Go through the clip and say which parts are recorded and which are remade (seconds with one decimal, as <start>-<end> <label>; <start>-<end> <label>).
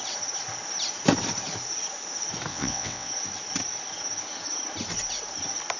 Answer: 0.0-2.5 recorded; 2.5-3.1 remade; 3.1-5.8 recorded